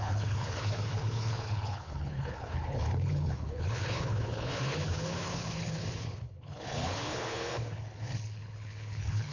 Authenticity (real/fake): fake